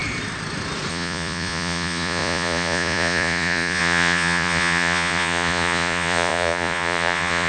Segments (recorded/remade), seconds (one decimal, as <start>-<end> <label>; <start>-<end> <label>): 0.0-0.9 recorded; 0.9-7.5 remade